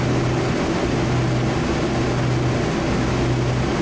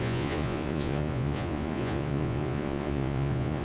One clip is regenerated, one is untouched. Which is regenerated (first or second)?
second